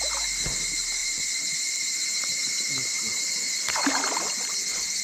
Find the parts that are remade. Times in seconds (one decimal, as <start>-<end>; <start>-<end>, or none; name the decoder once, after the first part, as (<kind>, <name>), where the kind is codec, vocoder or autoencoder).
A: 1.0-4.0 (vocoder, BigVGAN v2)